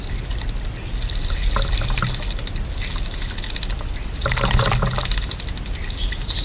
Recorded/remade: recorded